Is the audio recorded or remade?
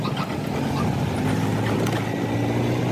recorded